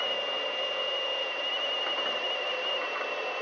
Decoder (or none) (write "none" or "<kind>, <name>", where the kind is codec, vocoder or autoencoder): none